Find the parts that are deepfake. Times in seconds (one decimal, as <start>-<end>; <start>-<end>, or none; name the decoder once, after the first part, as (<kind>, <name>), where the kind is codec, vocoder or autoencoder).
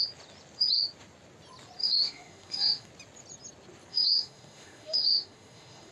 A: 1.8-2.9 (autoencoder, DAC-VAE); 3.9-5.9